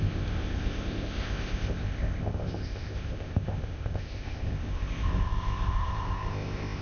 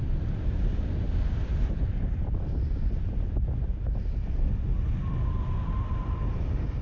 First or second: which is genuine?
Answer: second